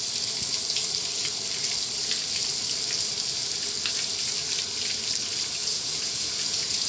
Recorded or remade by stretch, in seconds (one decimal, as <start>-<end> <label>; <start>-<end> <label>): 0.0-5.6 recorded; 5.6-6.9 remade

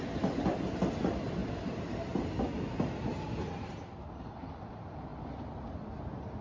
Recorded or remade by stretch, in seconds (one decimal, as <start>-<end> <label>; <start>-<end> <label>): 0.0-6.4 recorded

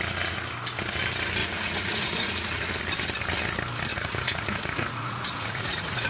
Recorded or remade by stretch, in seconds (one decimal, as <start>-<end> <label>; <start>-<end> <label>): 0.0-1.4 recorded; 1.4-2.7 remade; 2.7-3.9 recorded; 3.9-6.1 remade

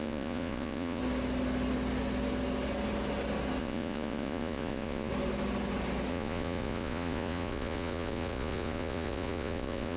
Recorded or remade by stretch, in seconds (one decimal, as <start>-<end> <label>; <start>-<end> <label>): 0.0-1.0 remade; 1.0-3.6 recorded; 3.6-5.1 remade; 5.1-6.1 recorded; 6.1-10.0 remade

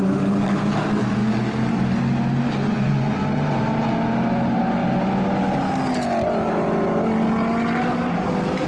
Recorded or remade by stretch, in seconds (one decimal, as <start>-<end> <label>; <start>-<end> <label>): 0.0-2.7 recorded; 2.7-3.2 remade; 3.2-8.7 recorded

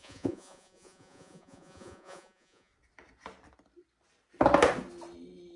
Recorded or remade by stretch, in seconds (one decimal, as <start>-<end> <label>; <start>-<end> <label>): 0.0-2.7 remade; 2.7-5.6 recorded

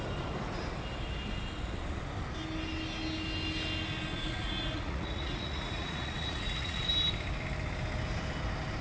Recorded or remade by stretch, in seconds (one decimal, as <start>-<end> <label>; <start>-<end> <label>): 0.0-4.1 recorded; 4.1-6.9 remade; 6.9-8.8 recorded

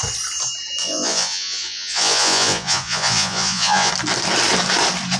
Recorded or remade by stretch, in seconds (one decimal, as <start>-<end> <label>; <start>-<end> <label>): 0.0-0.8 recorded; 0.8-3.9 remade; 3.9-5.2 recorded